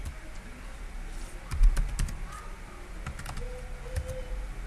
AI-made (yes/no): no